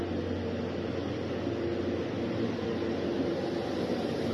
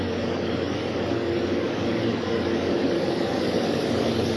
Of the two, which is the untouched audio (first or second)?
first